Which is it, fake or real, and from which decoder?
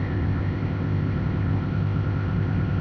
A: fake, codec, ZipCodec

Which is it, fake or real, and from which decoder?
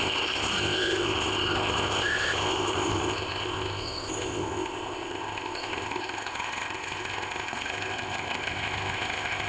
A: fake, codec, ZipCodec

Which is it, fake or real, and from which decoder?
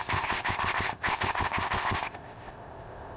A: fake, codec, ZipCodec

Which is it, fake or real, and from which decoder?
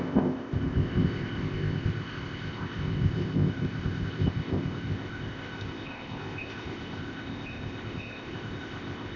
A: fake, codec, ZipCodec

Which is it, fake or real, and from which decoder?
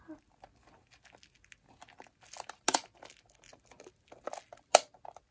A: real